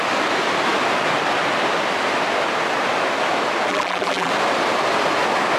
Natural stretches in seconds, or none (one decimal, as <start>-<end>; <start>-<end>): 0.0-3.7; 4.3-5.6